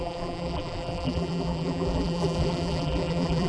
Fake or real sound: fake